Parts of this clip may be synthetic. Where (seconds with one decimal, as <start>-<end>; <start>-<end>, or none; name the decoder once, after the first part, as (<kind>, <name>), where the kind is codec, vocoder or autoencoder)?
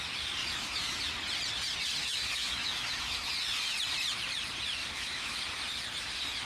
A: 0.4-1.0 (autoencoder, DAC-VAE); 2.0-3.3; 4.8-5.4